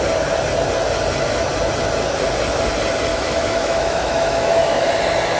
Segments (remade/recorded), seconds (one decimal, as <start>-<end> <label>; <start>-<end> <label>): 0.0-3.1 recorded; 3.1-4.9 remade; 4.9-5.4 recorded